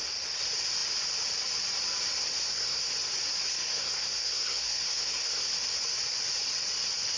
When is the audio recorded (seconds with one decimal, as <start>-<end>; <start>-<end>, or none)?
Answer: 0.0-2.4; 2.9-3.4; 5.5-7.2